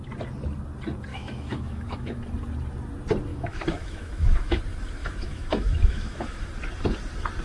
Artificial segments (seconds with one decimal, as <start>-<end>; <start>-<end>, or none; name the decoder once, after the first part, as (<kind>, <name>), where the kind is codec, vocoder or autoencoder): 1.1-2.2 (autoencoder, DAC-VAE); 3.3-4.6; 5.0-6.5

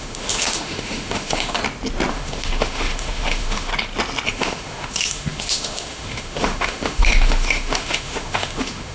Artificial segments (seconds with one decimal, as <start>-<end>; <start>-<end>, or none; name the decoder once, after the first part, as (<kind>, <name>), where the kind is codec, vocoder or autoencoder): 0.0-1.6 (autoencoder, DAC-VAE); 2.1-3.7; 4.3-8.9

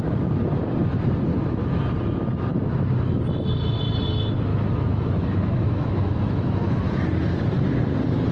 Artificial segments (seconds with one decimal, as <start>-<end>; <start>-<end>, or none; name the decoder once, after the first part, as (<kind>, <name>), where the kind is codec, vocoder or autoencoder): 1.3-1.8 (autoencoder, DAC-VAE); 2.5-3.2; 4.5-7.0

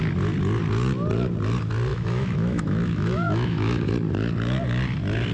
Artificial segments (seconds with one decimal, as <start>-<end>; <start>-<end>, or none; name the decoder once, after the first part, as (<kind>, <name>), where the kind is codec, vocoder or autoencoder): 1.9-3.9 (autoencoder, DAC-VAE)

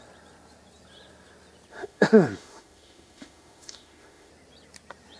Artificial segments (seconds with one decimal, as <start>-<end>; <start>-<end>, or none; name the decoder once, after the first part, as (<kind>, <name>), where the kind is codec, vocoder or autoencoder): 1.7-4.3 (autoencoder, DAC-VAE)

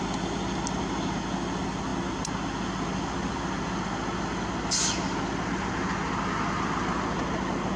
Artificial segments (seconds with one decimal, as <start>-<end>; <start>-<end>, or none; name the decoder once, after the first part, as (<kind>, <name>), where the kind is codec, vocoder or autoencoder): none

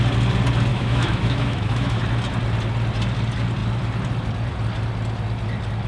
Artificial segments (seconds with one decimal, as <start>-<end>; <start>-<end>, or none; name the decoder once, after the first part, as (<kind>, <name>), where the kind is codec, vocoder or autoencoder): 0.7-2.0 (autoencoder, DAC-VAE)